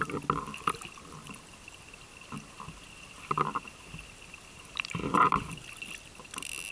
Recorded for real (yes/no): yes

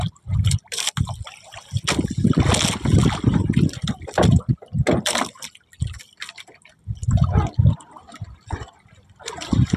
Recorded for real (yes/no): yes